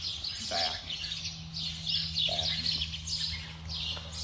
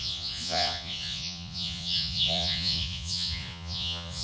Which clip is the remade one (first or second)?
second